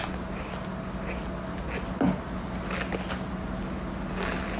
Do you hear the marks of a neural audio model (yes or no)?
no